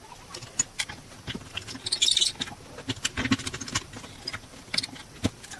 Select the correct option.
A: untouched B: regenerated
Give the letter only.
B